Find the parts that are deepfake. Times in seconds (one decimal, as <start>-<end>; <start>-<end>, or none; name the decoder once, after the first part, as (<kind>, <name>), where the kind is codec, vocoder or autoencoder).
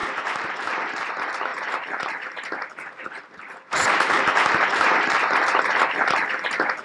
0.0-0.5 (vocoder, BigVGAN v2); 1.5-5.6